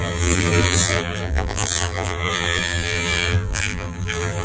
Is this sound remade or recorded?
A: remade